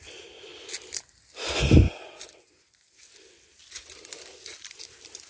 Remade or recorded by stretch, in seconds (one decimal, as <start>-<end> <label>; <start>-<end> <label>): 0.0-5.3 recorded

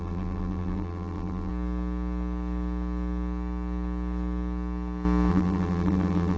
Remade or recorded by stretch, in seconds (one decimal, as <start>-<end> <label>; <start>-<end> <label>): 0.0-1.5 remade; 1.5-5.3 recorded; 5.3-6.4 remade

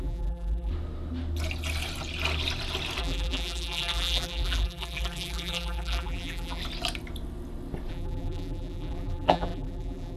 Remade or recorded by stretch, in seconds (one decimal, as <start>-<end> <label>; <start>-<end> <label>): 0.0-0.7 remade; 0.7-3.0 recorded; 3.0-6.6 remade; 6.6-7.9 recorded; 7.9-10.2 remade